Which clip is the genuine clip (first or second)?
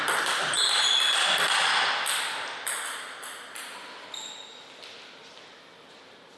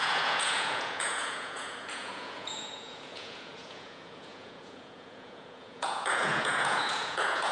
first